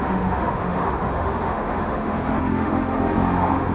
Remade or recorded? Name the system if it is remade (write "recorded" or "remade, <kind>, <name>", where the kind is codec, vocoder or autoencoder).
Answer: remade, autoencoder, DAC-VAE